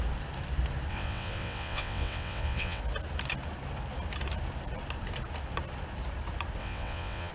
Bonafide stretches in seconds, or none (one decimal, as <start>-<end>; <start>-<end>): 0.0-0.9; 2.8-6.6